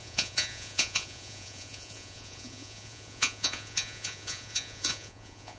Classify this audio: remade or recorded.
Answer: remade